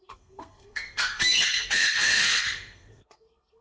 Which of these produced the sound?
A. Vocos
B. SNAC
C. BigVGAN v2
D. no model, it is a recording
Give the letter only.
B